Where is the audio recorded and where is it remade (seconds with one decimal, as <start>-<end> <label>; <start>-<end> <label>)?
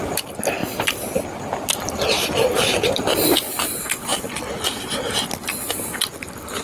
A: 0.0-6.6 recorded